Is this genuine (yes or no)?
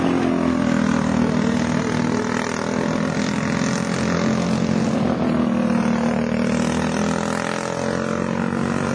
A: yes